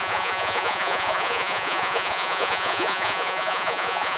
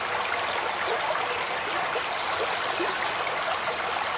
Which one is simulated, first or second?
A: first